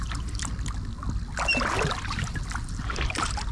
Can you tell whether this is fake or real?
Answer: fake